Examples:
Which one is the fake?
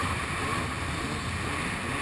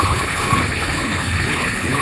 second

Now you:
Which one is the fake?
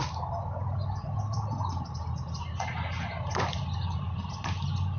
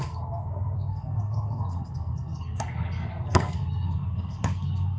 second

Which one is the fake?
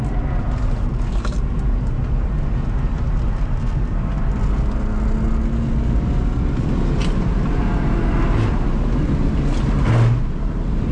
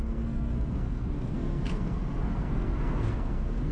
second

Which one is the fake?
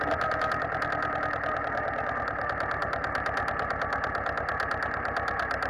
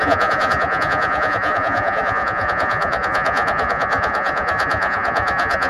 second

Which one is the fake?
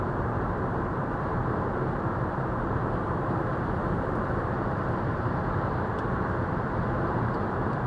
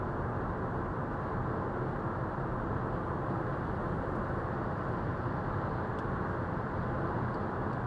first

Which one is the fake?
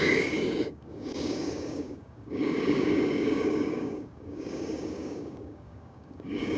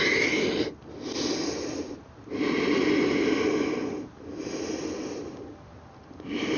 first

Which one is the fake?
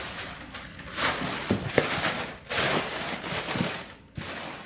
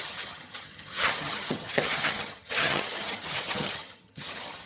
second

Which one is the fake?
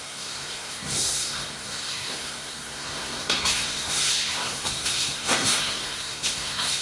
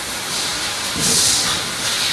first